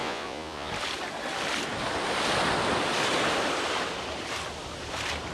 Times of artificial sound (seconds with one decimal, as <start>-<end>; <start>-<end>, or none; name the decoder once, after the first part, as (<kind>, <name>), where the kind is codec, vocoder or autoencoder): 0.0-0.7 (vocoder, Vocos)

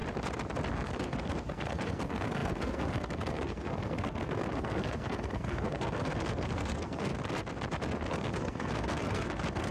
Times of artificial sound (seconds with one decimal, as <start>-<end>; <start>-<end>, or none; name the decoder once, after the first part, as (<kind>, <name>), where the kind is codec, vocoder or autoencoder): 0.7-7.1 (codec, SNAC); 8.1-9.7

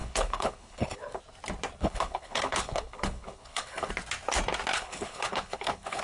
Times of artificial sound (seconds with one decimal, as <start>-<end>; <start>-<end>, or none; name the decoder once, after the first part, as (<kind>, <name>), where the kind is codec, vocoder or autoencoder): 0.0-1.2 (codec, HILCodec); 1.8-3.9; 4.7-6.0

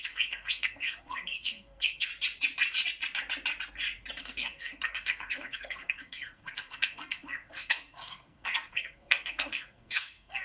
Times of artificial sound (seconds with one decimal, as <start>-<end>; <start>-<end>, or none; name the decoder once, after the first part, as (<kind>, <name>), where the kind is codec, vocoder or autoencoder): 0.0-2.1 (codec, SNAC); 4.2-10.4

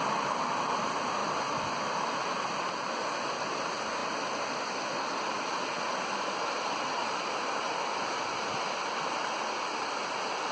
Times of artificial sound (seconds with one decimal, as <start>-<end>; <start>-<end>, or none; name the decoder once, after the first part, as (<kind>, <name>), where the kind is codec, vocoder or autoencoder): none

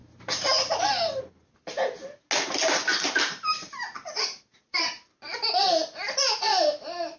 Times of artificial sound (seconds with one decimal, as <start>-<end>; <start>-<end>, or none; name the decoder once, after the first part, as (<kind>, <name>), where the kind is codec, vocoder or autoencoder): 0.0-1.2 (vocoder, BigVGAN v2); 2.9-7.2

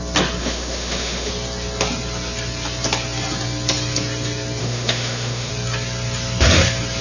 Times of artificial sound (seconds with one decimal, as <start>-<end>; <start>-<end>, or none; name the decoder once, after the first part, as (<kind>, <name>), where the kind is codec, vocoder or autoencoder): 0.4-1.3 (autoencoder, DAC-VAE); 4.6-5.5